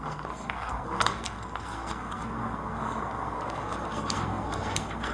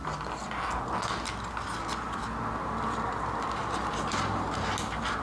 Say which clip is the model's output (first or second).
first